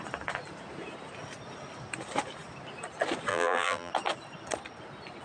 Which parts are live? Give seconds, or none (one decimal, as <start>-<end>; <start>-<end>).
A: 0.0-3.3; 3.9-5.2